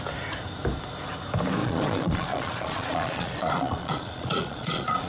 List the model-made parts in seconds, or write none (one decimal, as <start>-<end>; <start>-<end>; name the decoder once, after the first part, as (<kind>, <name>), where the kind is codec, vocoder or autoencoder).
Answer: 1.6-5.1 (vocoder, Vocos)